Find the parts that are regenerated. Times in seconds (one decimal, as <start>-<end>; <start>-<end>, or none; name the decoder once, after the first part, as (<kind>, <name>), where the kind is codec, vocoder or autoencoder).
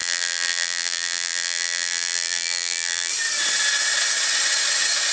0.0-3.1 (vocoder, BigVGAN v2)